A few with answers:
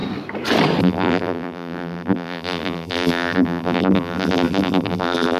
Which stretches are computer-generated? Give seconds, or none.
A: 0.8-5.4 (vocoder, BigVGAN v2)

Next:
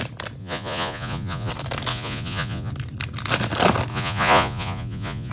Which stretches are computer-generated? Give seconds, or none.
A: 0.4-1.5 (vocoder, Vocos); 1.9-2.7; 3.9-5.3

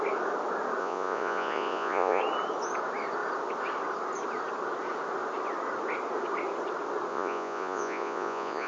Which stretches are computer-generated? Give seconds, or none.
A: 0.8-2.2 (vocoder, Vocos); 7.1-8.7

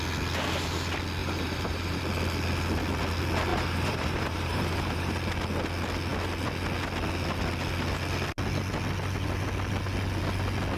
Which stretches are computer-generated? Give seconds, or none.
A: 1.2-2.0 (vocoder, BigVGAN v2); 3.5-5.1